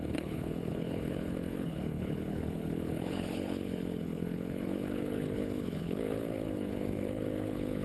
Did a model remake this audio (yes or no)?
yes